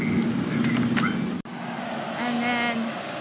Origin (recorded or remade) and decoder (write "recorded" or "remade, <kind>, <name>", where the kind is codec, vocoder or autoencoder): recorded